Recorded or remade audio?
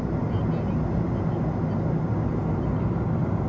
recorded